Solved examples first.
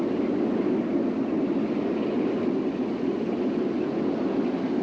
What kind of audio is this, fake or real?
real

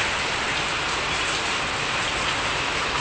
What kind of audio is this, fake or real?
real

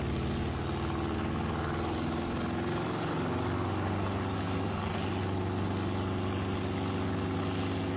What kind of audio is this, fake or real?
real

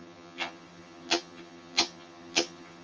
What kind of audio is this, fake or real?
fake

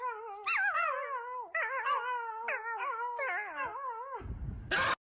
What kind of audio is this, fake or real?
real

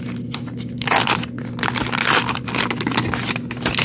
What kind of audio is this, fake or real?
real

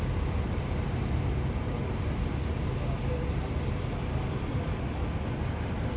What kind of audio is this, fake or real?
real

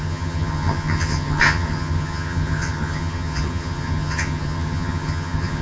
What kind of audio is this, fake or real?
fake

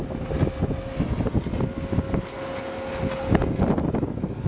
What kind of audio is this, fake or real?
real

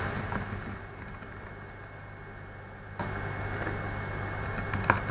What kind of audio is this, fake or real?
real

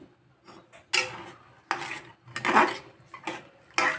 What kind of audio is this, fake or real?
real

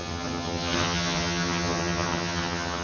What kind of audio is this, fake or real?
fake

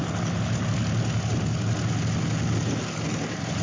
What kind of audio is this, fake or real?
real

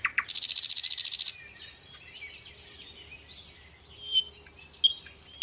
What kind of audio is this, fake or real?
real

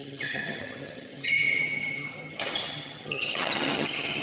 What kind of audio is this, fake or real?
fake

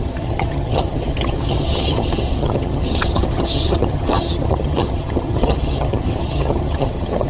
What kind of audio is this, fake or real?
fake